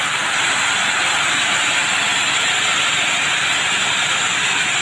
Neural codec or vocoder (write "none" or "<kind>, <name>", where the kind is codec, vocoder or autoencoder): none